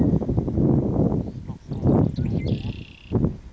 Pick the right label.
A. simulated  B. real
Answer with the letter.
B